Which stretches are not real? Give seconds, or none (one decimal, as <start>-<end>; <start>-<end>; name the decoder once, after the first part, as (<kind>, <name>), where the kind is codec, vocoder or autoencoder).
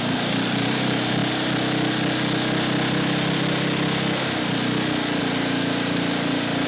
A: 0.0-1.2 (vocoder, BigVGAN v2); 5.2-6.7